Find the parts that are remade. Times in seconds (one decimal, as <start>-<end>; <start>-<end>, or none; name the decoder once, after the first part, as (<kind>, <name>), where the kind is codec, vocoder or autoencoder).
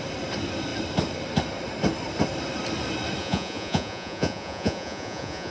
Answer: 3.2-5.5 (vocoder, Vocos)